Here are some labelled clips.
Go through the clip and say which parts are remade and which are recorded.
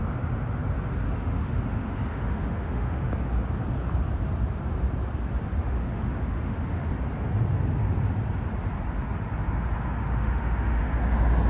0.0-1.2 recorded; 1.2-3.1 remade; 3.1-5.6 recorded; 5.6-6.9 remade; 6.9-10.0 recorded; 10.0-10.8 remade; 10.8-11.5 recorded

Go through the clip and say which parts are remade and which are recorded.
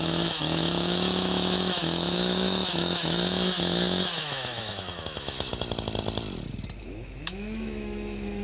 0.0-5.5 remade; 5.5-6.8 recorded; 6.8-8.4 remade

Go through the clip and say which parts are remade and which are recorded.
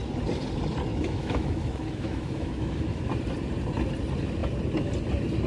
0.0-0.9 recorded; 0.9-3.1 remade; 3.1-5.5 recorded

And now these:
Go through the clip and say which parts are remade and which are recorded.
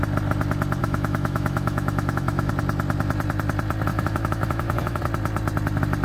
0.0-0.8 recorded; 0.8-2.5 remade; 2.5-3.9 recorded; 3.9-5.0 remade; 5.0-6.0 recorded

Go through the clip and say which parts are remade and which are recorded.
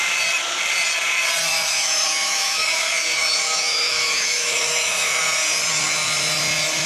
0.0-1.5 recorded; 1.5-5.2 remade; 5.2-6.9 recorded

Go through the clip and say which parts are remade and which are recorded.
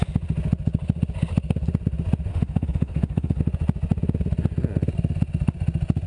0.0-2.3 recorded; 2.3-3.4 remade; 3.4-6.1 recorded